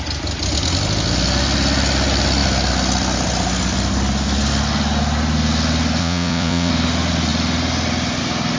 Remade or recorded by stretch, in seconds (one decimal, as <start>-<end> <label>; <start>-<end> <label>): 0.0-6.0 recorded; 6.0-6.7 remade; 6.7-8.6 recorded

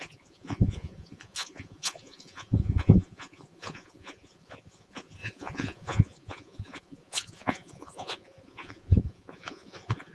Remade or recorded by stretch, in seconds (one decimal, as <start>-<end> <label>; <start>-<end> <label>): 0.0-10.1 remade

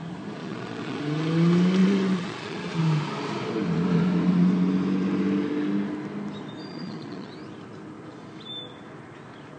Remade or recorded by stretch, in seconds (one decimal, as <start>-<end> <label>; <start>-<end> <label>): 0.0-0.4 recorded; 0.4-1.0 remade; 1.0-1.8 recorded; 1.8-2.8 remade; 2.8-6.7 recorded; 6.7-7.3 remade; 7.3-9.6 recorded

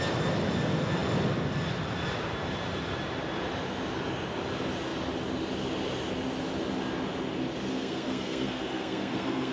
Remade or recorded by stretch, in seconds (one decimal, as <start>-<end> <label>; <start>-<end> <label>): 0.0-7.7 recorded; 7.7-9.5 remade

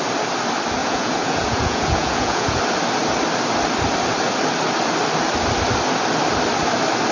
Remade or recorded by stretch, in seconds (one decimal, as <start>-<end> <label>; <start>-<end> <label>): 0.0-0.8 recorded; 0.8-2.6 remade; 2.6-7.1 recorded

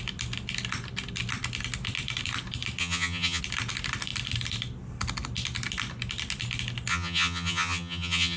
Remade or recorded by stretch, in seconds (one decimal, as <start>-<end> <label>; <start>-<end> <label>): 0.0-2.8 recorded; 2.8-3.4 remade; 3.4-6.9 recorded; 6.9-8.4 remade

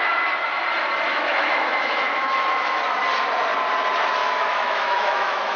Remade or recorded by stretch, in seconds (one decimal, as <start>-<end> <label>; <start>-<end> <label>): 0.0-1.1 recorded; 1.1-2.8 remade; 2.8-4.2 recorded; 4.2-5.6 remade

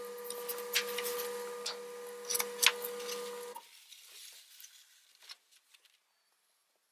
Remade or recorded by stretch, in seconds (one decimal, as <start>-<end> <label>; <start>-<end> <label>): 0.0-6.9 recorded